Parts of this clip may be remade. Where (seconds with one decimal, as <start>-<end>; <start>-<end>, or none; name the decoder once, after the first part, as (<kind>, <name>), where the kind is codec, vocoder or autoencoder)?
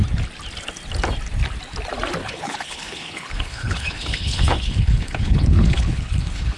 2.2-6.6 (codec, HILCodec)